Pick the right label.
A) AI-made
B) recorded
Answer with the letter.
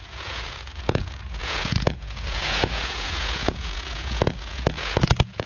A